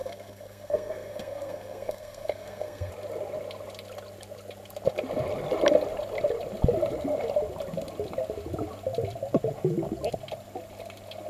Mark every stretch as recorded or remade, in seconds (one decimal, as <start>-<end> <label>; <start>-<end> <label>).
0.0-2.9 remade; 2.9-11.3 recorded